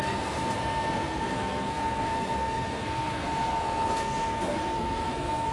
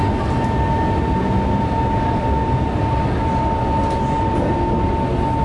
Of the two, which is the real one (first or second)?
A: second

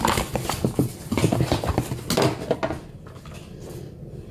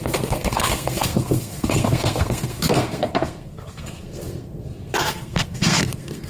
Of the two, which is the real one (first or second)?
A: first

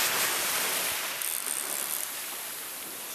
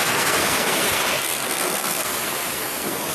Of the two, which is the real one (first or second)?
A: first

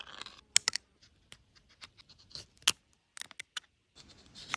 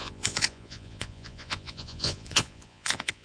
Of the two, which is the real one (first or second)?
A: first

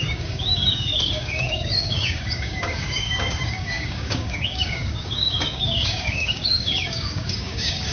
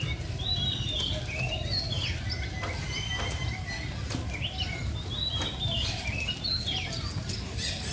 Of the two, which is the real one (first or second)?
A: second